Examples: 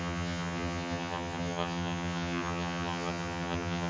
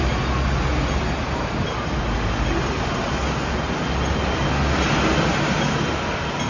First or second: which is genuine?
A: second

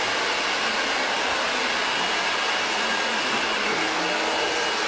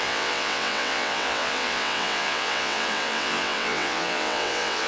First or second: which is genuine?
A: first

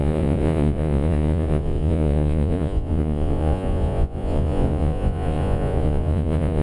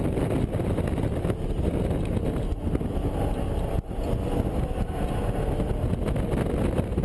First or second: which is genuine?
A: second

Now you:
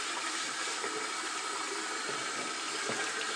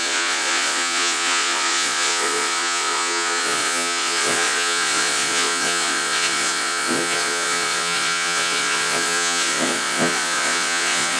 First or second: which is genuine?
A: first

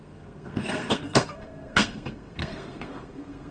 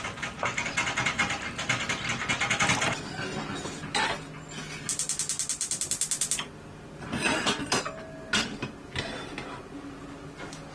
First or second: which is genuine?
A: second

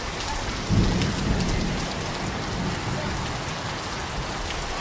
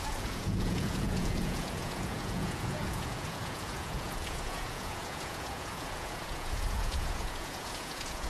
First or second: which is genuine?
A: first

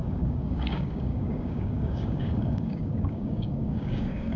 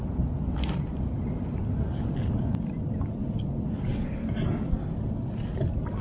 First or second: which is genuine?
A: second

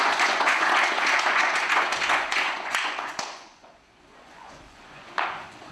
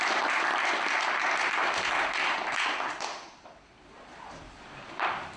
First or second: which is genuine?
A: second